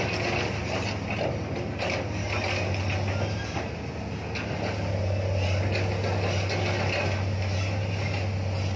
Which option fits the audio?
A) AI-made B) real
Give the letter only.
B